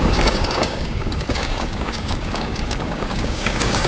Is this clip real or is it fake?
fake